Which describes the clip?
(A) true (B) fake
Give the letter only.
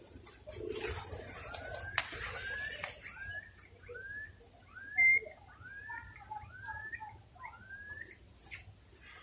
A